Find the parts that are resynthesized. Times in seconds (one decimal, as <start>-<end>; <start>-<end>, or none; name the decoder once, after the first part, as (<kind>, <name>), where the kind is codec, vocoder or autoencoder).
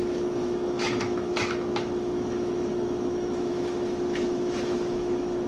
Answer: 0.0-5.5 (autoencoder, DAC-VAE)